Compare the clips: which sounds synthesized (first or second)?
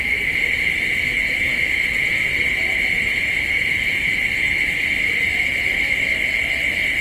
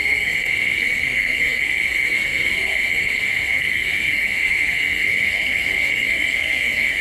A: second